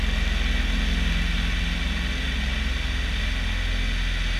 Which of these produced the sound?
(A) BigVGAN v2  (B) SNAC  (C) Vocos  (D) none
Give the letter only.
D